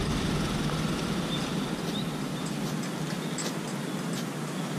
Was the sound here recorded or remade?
recorded